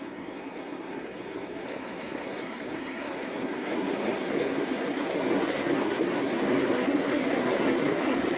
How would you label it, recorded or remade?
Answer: remade